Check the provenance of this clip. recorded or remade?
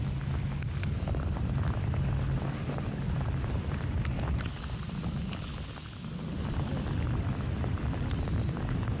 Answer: recorded